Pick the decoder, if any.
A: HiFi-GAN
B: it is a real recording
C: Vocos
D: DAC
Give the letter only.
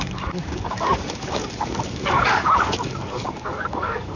D